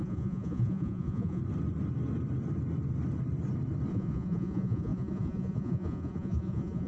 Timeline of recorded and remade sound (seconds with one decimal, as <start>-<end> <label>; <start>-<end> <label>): 0.0-1.4 remade; 1.4-3.9 recorded; 3.9-6.9 remade